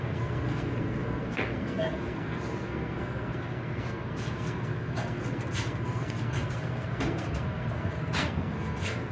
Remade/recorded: remade